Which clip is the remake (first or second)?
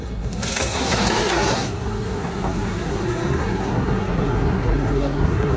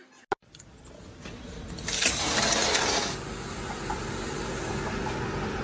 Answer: first